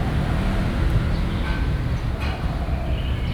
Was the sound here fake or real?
real